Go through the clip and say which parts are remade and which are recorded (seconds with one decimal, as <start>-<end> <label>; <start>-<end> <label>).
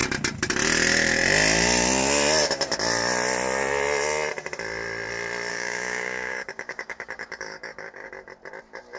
0.0-5.5 recorded; 5.5-8.1 remade; 8.1-9.0 recorded